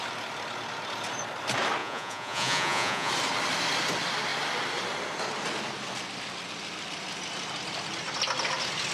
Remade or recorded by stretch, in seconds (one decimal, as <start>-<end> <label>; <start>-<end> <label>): 0.0-1.8 recorded; 1.8-3.1 remade; 3.1-8.9 recorded